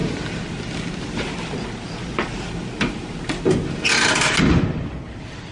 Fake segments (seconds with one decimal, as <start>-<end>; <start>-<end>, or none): none